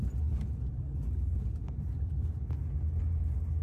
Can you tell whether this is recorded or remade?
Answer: recorded